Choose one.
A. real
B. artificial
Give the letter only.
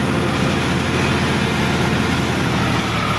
A